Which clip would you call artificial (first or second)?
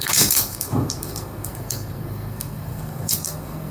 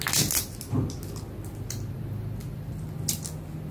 first